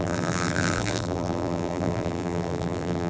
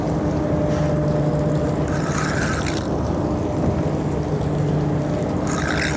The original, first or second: second